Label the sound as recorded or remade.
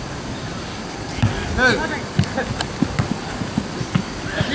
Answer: recorded